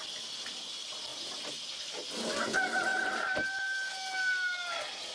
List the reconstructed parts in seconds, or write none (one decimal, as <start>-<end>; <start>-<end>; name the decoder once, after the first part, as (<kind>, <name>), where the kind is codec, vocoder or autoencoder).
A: 2.9-3.9 (vocoder, BigVGAN v2)